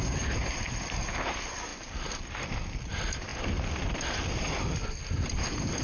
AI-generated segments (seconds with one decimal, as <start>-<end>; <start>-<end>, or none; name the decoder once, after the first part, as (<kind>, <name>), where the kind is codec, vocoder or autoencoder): 0.0-3.3 (vocoder, BigVGAN v2); 4.4-5.8